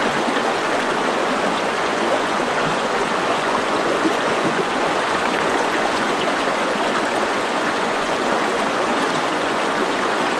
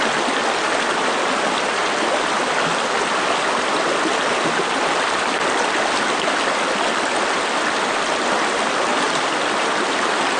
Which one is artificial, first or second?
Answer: first